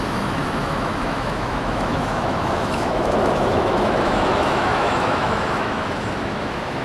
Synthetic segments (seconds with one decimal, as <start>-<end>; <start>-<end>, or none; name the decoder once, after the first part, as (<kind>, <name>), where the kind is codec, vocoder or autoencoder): 0.0-6.8 (autoencoder, DAC-VAE)